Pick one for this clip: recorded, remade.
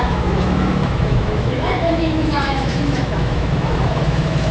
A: remade